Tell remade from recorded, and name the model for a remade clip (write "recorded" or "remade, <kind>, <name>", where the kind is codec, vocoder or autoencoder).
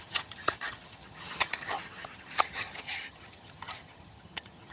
remade, vocoder, HiFi-GAN